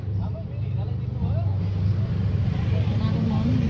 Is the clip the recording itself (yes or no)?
yes